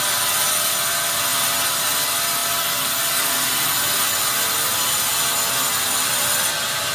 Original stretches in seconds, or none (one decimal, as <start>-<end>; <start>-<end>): 0.0-6.9